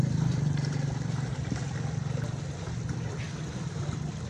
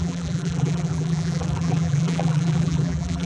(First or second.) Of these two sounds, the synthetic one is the second